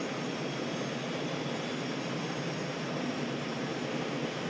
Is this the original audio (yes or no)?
yes